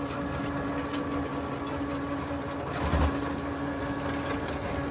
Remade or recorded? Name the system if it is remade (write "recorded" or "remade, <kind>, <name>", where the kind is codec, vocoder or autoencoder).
recorded